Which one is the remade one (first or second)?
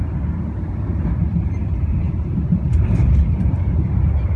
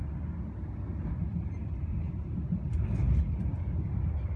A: first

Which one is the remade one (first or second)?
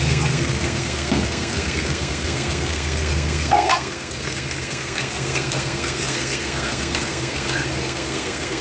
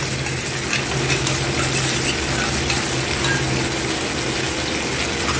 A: first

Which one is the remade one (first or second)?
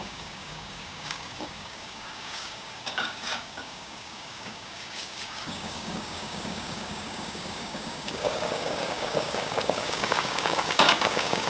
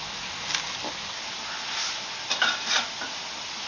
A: first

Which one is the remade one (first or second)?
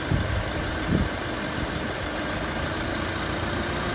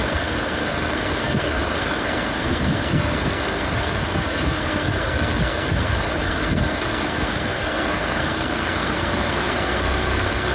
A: second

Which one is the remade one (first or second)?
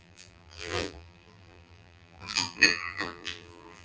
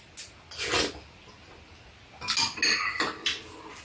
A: first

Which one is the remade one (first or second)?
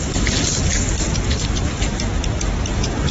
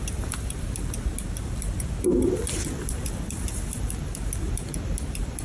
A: second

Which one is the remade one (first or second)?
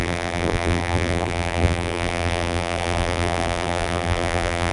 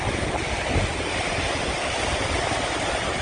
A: first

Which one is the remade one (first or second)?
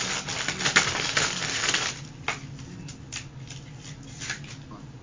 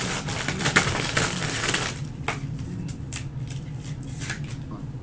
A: second